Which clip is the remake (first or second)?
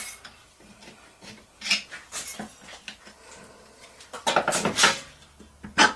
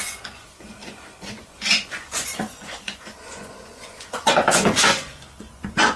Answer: second